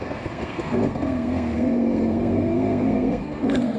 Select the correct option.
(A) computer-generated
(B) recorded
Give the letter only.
A